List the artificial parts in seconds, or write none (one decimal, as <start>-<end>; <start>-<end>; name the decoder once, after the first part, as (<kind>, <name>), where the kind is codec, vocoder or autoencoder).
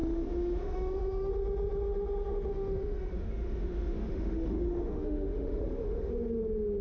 0.0-1.3 (autoencoder, DAC-VAE); 2.5-6.1